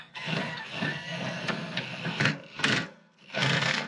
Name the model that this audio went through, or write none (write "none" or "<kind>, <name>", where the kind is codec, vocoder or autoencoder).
codec, SNAC